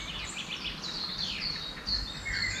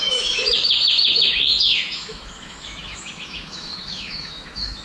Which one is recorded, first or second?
first